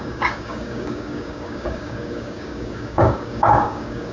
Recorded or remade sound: remade